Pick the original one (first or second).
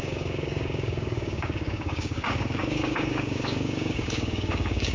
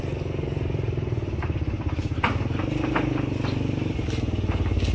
second